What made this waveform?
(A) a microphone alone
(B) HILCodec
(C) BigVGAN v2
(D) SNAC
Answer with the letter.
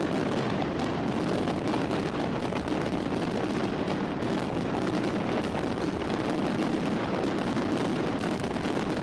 A